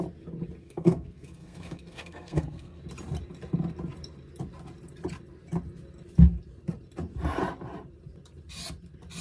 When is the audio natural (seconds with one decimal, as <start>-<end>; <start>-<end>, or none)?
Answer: 0.0-0.6; 2.8-9.2